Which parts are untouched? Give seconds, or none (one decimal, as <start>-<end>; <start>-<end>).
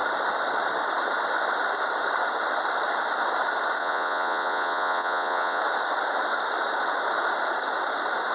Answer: 0.0-3.8; 5.6-8.3